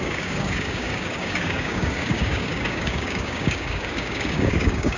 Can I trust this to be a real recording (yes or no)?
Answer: no